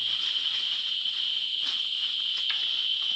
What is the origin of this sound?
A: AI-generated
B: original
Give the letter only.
A